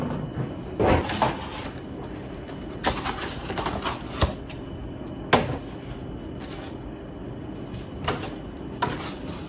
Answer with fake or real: real